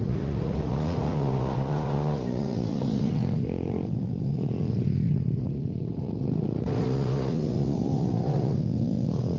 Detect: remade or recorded remade